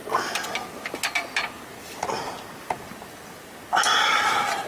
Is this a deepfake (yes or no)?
no